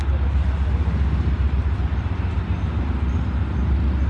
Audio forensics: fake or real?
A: real